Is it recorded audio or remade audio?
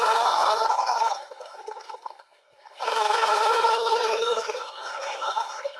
remade